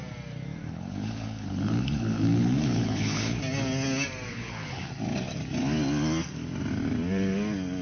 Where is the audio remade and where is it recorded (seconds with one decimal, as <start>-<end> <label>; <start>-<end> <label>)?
0.0-0.6 recorded; 0.6-3.4 remade; 3.4-4.3 recorded; 4.3-4.9 remade; 4.9-7.8 recorded